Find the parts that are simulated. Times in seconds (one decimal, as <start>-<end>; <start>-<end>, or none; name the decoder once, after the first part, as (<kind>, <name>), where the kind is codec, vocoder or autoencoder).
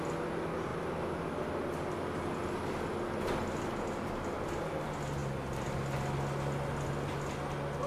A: none